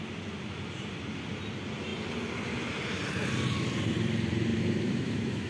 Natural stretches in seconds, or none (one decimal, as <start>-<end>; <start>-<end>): 0.0-4.5